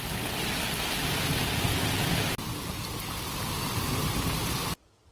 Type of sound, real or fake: real